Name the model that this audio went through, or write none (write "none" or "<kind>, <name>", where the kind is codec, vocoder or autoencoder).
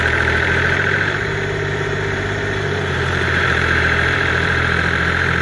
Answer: vocoder, BigVGAN v2